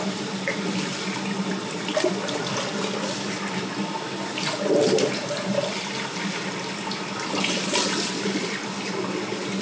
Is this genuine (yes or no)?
yes